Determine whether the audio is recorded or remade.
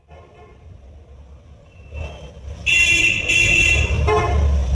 recorded